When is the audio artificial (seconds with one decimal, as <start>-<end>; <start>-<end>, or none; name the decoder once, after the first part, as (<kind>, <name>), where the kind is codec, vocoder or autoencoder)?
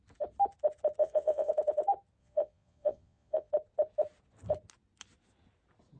1.0-1.5 (vocoder, Vocos); 2.2-3.5